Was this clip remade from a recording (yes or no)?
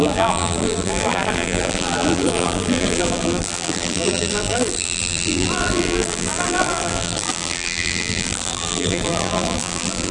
yes